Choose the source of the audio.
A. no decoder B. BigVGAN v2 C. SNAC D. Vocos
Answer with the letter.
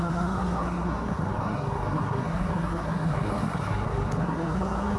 C